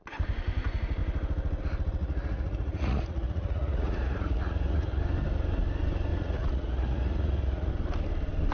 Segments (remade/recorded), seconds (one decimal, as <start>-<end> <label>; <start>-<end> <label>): 0.0-2.0 recorded; 2.0-5.0 remade; 5.0-6.1 recorded; 6.1-7.7 remade; 7.7-8.5 recorded